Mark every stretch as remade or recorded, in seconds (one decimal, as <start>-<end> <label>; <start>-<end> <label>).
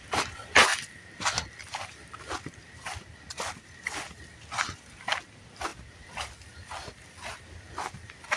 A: 0.0-0.7 recorded; 0.7-5.2 remade; 5.2-5.7 recorded; 5.7-7.4 remade; 7.4-8.4 recorded